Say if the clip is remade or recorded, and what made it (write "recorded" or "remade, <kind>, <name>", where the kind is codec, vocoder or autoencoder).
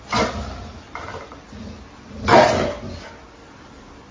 recorded